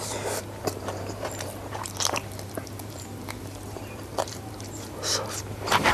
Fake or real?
fake